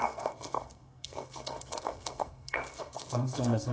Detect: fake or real fake